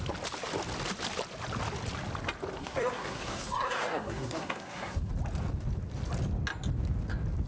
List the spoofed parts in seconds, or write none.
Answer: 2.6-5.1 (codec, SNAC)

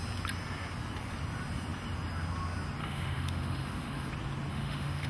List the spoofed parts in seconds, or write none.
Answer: 2.8-4.1 (autoencoder, DAC-VAE); 4.5-5.1

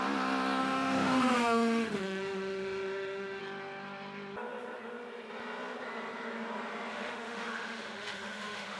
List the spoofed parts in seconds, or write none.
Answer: 0.6-3.4 (autoencoder, DAC-VAE); 6.9-8.8

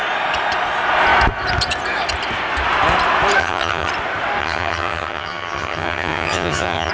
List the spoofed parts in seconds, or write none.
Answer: 3.4-3.9 (vocoder, HiFi-GAN); 4.4-6.9

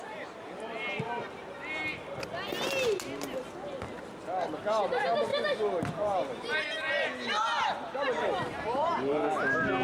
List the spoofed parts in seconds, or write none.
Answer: 5.3-9.3 (vocoder, BigVGAN v2)

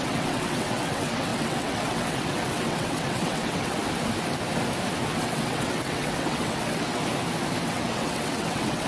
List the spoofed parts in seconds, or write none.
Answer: 0.0-3.8 (vocoder, WaveNeXt); 5.1-7.0; 7.6-8.9

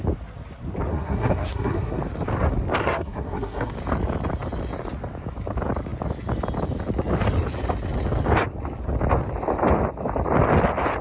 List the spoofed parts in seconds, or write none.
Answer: 0.9-2.0 (codec, SNAC); 2.8-3.7